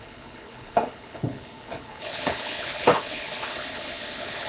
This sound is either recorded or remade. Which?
remade